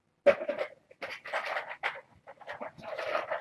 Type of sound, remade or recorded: recorded